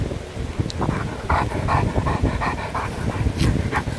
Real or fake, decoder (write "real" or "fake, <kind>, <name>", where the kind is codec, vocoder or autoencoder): real